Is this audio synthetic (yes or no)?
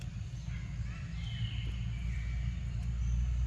no